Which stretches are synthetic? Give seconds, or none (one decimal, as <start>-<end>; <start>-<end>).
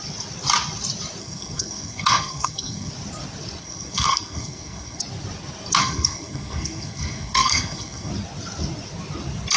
1.2-2.9; 3.6-5.0; 5.8-8.1